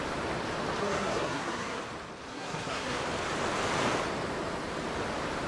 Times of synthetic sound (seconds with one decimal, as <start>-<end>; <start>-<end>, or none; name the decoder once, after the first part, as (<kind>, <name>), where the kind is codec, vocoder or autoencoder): 0.8-1.8 (codec, SNAC); 2.3-3.0